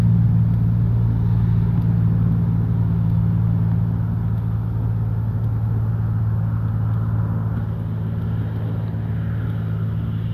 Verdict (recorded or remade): recorded